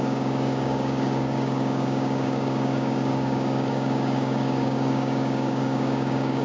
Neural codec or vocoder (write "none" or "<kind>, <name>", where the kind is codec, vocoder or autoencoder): codec, DAC